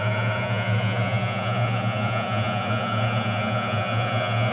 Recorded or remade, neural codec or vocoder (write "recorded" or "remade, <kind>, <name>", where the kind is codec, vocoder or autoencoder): remade, vocoder, Vocos